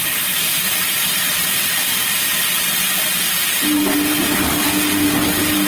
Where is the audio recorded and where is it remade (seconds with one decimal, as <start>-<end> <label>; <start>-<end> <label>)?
0.0-0.5 recorded; 0.5-2.6 remade; 2.6-5.7 recorded